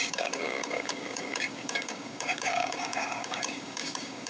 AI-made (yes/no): yes